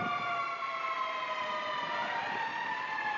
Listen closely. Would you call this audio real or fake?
real